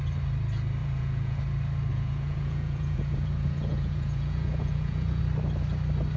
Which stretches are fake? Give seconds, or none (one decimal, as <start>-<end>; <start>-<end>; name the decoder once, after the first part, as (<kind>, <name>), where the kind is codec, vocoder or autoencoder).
0.8-1.4 (vocoder, Vocos); 1.9-5.2

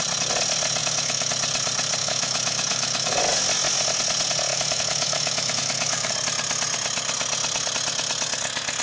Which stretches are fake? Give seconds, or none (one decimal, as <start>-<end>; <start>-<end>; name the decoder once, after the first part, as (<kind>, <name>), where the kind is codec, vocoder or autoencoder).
0.8-1.3 (autoencoder, DAC-VAE); 2.0-3.2; 4.5-6.1

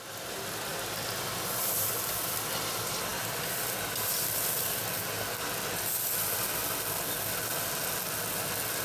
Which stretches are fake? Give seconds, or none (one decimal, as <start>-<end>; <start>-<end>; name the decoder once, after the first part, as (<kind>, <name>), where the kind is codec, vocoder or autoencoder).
0.7-2.5 (vocoder, BigVGAN v2); 3.1-5.0

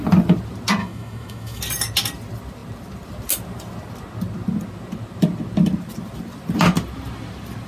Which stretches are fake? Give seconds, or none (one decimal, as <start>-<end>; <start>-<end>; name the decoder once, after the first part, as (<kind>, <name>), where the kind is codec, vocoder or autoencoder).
0.8-1.6 (autoencoder, DAC-VAE)